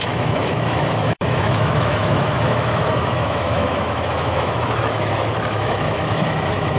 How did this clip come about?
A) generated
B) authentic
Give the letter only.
A